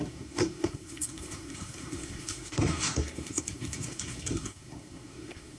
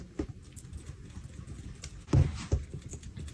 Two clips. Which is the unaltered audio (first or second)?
second